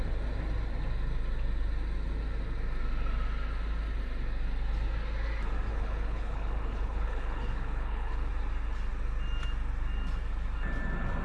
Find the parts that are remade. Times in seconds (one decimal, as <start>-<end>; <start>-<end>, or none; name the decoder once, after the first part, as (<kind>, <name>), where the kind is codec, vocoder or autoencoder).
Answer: 5.7-8.3 (codec, HILCodec)